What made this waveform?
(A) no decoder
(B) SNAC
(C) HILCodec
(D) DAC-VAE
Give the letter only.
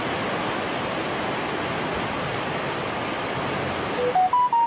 A